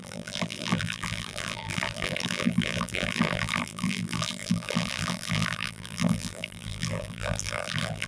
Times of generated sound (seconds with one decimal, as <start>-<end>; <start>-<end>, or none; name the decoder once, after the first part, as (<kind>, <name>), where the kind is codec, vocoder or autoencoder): 0.0-8.1 (vocoder, BigVGAN v2)